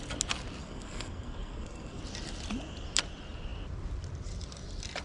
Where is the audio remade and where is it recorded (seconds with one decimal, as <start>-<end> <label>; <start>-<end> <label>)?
0.0-0.6 recorded; 0.6-2.0 remade; 2.0-5.0 recorded